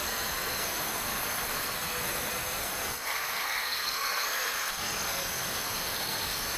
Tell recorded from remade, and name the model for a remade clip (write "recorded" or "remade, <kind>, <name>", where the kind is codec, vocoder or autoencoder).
remade, codec, SNAC